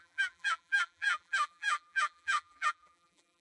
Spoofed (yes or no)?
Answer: yes